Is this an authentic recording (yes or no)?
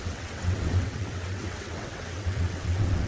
no